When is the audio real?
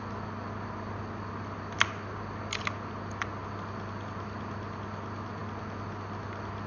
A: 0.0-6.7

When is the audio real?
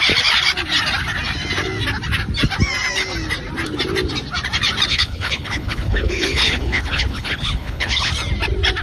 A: 0.0-4.9; 8.1-8.8